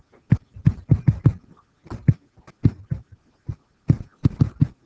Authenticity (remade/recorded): recorded